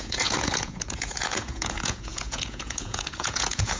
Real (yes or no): no